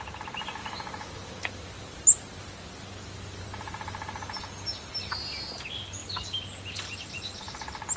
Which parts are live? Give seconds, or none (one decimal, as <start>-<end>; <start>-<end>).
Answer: 0.0-0.6; 1.7-8.0